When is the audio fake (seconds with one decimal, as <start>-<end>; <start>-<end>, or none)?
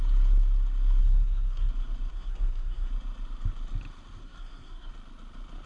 1.0-1.7; 2.1-2.9; 4.2-4.9